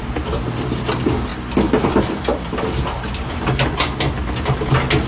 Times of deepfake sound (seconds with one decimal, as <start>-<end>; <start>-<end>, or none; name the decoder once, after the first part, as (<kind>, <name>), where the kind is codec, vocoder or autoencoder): none

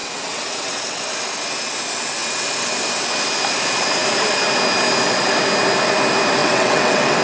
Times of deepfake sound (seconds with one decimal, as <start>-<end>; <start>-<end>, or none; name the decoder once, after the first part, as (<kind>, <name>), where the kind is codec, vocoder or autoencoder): 0.0-1.0 (vocoder, WaveNeXt); 6.4-7.2

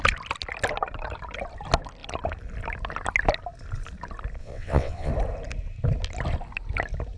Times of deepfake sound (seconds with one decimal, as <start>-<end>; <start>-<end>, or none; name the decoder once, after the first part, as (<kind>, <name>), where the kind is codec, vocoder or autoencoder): 4.4-5.1 (vocoder, WaveNeXt)

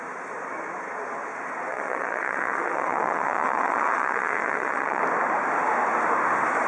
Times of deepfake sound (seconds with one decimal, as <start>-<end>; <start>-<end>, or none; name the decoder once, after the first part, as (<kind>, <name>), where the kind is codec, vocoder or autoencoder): 1.7-5.0 (vocoder, WaveNeXt)